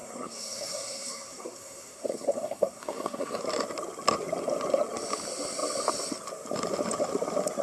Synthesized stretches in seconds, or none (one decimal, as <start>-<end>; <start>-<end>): 0.0-3.4

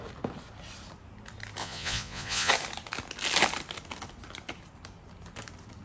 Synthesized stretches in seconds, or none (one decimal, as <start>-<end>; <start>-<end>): 1.6-2.5

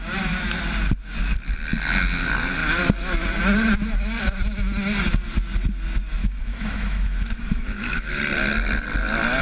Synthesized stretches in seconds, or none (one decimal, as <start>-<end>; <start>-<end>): 6.2-8.2

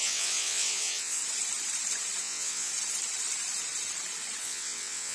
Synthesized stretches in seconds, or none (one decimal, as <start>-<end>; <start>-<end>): 0.0-1.2; 2.2-2.7; 4.4-5.1

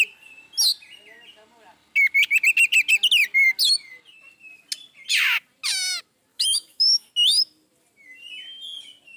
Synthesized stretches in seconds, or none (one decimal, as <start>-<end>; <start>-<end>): 6.3-7.0

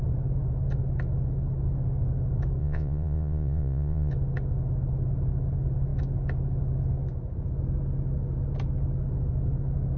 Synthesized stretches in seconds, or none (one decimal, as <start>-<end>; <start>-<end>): 2.6-4.1

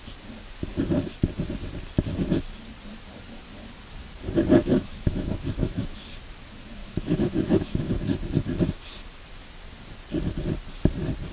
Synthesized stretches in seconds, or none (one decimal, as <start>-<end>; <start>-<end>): 4.6-6.1; 6.8-7.9

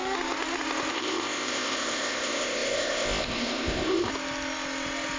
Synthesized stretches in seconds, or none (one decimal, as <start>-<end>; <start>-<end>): 0.9-4.1